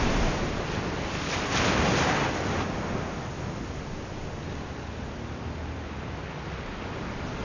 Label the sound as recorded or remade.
recorded